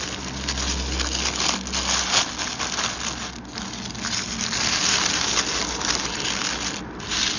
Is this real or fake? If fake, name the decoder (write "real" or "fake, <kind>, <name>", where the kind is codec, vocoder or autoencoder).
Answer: real